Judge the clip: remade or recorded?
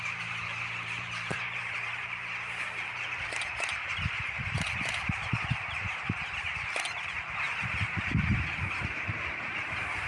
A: remade